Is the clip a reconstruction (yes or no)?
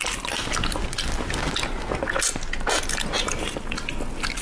no